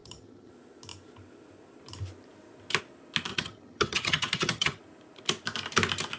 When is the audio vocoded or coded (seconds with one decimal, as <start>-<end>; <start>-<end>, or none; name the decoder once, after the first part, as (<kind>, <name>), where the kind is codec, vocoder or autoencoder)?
0.0-0.5 (vocoder, HiFi-GAN); 3.3-4.8